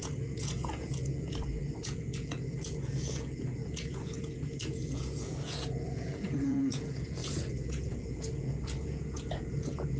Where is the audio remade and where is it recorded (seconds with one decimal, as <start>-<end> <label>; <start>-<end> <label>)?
0.0-10.0 remade